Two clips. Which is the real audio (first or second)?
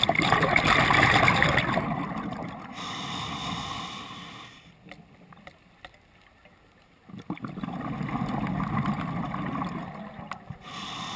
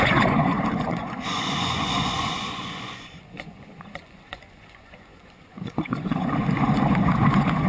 first